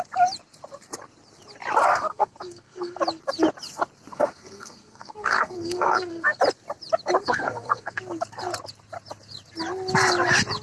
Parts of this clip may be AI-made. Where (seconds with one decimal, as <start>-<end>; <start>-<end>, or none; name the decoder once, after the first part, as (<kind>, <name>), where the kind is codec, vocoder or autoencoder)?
1.9-3.0 (codec, SNAC); 4.1-6.4; 7.2-8.0